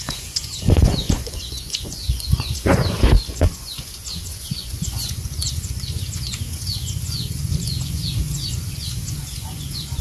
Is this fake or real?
fake